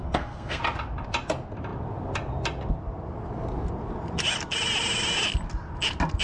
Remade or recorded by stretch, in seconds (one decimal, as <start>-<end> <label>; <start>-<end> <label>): 0.0-0.6 remade; 0.6-6.2 recorded